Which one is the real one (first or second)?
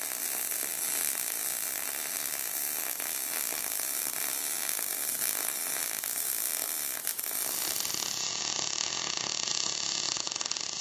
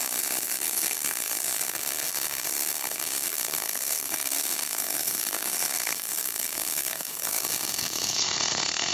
first